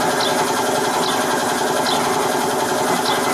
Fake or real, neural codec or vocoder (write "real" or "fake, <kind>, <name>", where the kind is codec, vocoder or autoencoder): real